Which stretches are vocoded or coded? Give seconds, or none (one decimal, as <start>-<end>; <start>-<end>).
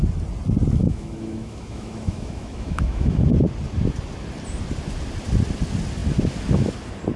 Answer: 0.8-3.2